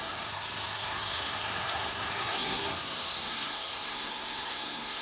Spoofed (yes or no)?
yes